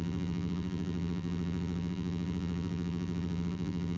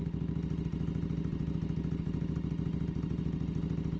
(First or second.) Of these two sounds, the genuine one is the second